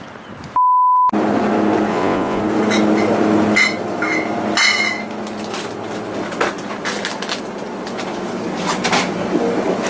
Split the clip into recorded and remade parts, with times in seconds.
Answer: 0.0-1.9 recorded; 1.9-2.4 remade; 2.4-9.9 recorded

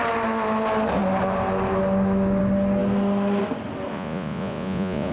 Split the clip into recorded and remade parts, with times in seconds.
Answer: 0.0-3.9 recorded; 3.9-5.1 remade

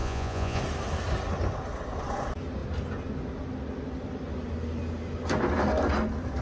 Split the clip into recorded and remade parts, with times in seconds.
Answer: 0.0-0.6 remade; 0.6-6.4 recorded

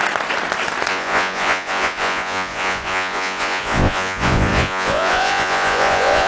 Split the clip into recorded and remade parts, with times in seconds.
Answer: 0.0-0.9 recorded; 0.9-6.3 remade

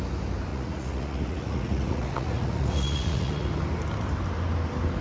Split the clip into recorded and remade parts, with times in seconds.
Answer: 0.0-0.5 recorded; 0.5-3.5 remade; 3.5-5.0 recorded

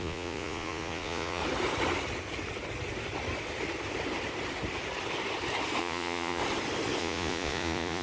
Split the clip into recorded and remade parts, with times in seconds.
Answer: 0.0-1.4 remade; 1.4-5.8 recorded; 5.8-6.4 remade; 6.4-7.0 recorded; 7.0-8.0 remade